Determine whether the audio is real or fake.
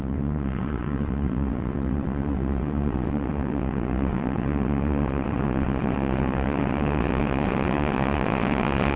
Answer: fake